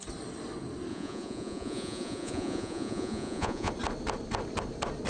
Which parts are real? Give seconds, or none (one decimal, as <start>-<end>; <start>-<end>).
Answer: 0.0-0.9; 3.7-5.1